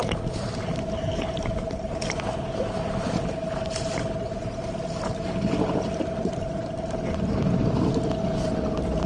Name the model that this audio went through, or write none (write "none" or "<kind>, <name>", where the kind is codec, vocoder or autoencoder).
none